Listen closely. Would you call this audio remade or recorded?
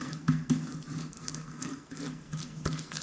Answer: remade